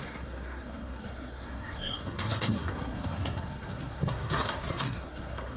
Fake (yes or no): yes